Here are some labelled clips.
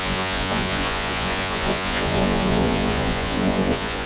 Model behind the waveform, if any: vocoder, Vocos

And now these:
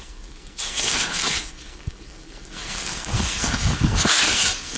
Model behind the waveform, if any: codec, SNAC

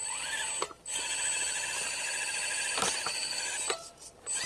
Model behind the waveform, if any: none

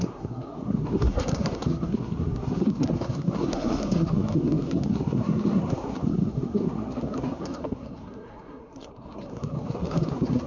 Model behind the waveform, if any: codec, SNAC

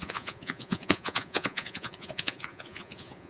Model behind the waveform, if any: vocoder, Vocos